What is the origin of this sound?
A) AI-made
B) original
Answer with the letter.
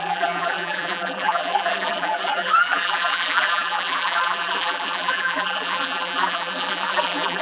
A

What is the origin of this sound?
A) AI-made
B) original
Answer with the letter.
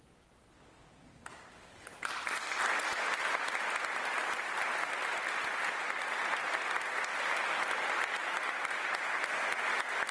B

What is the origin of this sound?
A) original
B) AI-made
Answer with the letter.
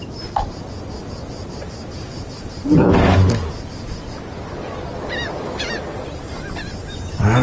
A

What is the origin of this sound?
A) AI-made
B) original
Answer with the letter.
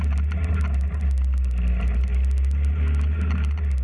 B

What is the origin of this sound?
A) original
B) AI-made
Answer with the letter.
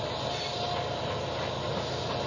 A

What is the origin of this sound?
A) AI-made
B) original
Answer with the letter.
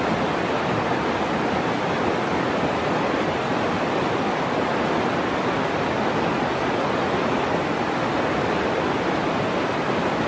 B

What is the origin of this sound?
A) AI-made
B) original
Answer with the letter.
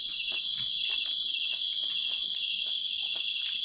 B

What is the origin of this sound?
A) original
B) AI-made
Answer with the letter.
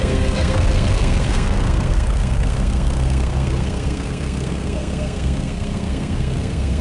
B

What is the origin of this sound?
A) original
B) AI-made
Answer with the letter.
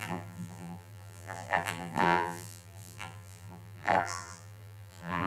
B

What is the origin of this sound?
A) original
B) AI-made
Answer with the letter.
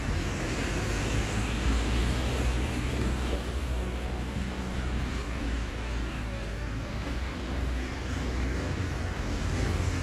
B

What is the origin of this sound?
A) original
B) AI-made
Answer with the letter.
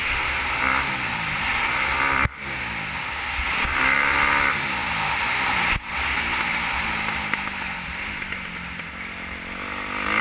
A